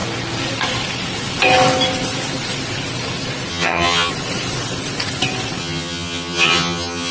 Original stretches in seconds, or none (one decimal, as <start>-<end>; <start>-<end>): 0.0-3.5; 4.1-5.6